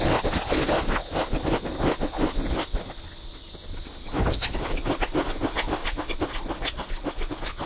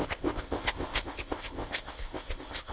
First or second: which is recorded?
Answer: first